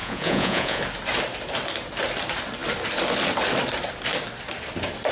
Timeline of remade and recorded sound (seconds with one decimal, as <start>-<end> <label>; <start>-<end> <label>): 0.0-0.8 remade; 0.8-5.1 recorded